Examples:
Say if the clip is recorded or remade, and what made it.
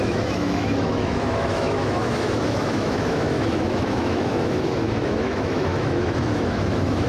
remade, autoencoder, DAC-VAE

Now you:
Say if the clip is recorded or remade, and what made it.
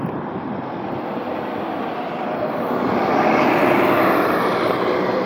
recorded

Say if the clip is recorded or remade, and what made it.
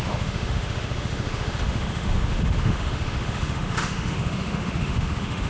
remade, autoencoder, DAC-VAE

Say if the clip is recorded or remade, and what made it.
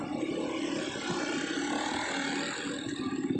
recorded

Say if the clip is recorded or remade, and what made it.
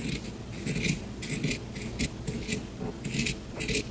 recorded